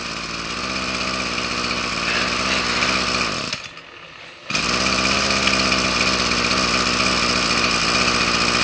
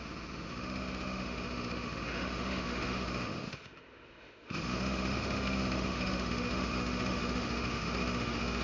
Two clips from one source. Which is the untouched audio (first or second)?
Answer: first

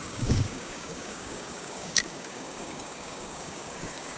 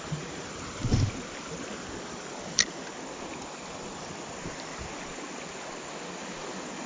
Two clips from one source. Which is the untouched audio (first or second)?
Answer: second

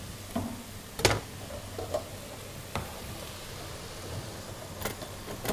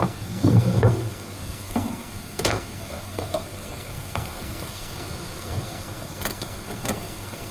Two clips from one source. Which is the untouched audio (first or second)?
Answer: first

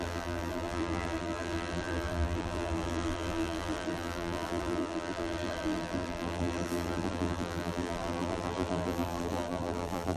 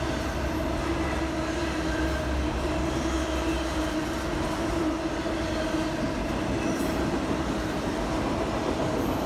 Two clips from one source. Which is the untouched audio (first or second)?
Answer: second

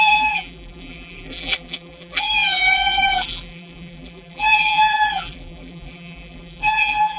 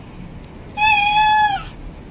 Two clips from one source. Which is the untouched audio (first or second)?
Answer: second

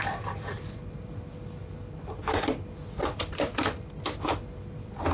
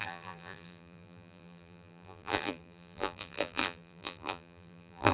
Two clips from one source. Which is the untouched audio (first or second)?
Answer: first